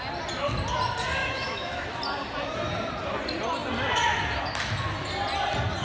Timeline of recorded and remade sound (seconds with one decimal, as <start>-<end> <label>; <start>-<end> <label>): 0.0-1.2 recorded; 1.2-2.0 remade; 2.0-5.8 recorded